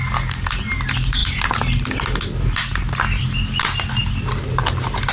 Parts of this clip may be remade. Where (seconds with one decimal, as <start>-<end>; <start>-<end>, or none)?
none

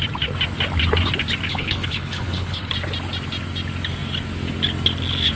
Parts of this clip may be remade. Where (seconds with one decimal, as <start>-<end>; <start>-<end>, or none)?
1.5-2.7

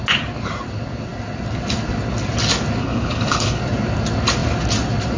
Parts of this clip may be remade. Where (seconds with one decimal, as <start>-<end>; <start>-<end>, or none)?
2.8-3.6